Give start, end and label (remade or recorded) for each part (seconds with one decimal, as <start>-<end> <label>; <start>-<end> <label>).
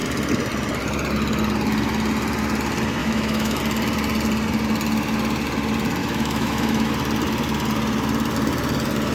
0.0-3.0 recorded; 3.0-3.6 remade; 3.6-6.0 recorded; 6.0-6.9 remade; 6.9-9.1 recorded